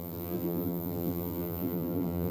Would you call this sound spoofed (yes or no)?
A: yes